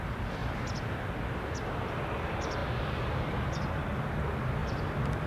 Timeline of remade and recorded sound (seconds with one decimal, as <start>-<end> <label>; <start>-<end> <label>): 0.0-0.4 recorded; 0.4-1.1 remade; 1.1-4.6 recorded; 4.6-5.3 remade